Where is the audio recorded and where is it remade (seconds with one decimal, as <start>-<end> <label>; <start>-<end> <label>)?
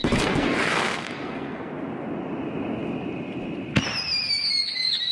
0.0-1.7 remade; 1.7-5.1 recorded